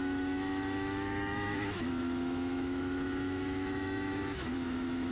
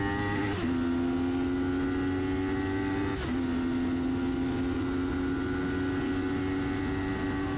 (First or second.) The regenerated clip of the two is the first